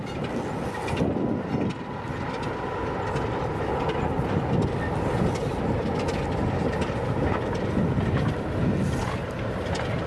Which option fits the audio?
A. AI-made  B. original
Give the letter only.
B